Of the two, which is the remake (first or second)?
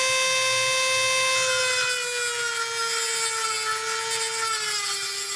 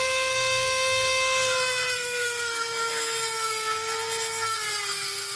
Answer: second